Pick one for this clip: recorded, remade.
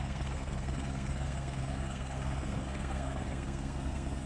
remade